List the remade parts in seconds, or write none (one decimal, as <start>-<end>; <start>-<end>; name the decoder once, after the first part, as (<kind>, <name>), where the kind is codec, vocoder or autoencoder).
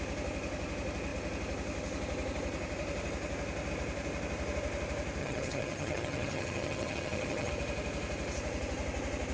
5.2-7.5 (vocoder, HiFi-GAN)